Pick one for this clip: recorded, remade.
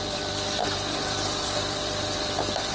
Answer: remade